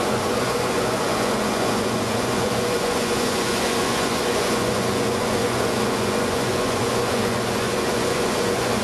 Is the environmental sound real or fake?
fake